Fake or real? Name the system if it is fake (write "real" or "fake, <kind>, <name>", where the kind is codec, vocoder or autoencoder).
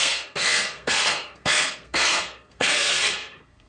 fake, codec, SNAC